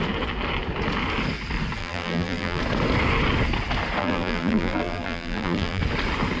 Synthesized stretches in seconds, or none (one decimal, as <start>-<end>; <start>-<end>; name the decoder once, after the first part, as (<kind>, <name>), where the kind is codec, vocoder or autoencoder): 1.8-2.6 (vocoder, BigVGAN v2); 4.0-5.8